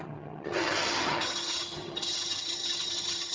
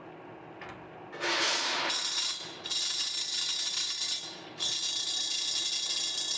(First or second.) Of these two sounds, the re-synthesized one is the first